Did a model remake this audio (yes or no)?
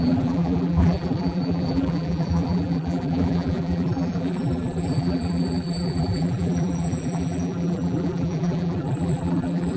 yes